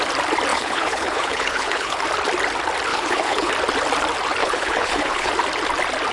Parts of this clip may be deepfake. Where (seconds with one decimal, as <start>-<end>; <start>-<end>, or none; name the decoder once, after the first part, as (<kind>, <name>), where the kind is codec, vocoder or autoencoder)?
0.5-2.0 (codec, HILCodec); 2.9-3.5; 4.4-5.3